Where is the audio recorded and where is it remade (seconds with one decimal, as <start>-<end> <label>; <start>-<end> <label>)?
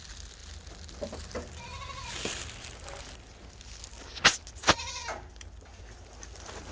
0.0-6.7 recorded